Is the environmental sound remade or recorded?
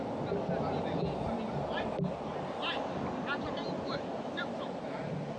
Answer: recorded